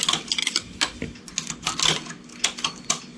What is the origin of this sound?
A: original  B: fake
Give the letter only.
A